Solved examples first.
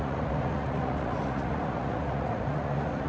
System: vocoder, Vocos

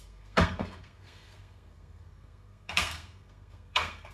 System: codec, SNAC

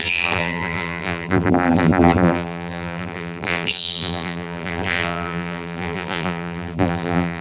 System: vocoder, BigVGAN v2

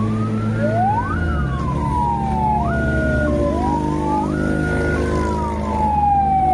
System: none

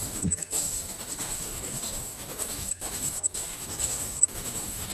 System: codec, DAC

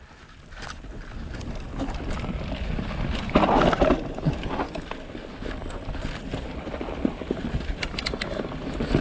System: none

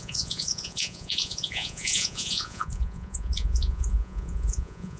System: vocoder, Vocos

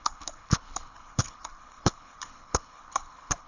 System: codec, HILCodec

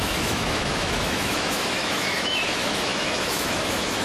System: autoencoder, DAC-VAE